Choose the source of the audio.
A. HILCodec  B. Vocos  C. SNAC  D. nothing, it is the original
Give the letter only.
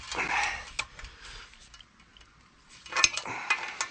D